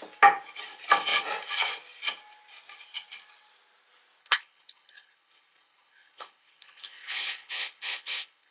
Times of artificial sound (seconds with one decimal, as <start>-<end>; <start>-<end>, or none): 4.2-8.5